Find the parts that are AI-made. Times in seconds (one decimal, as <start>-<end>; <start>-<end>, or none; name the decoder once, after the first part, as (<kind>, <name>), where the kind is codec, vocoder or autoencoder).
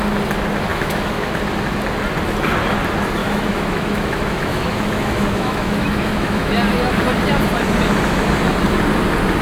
0.7-1.4 (autoencoder, DAC-VAE); 3.2-6.5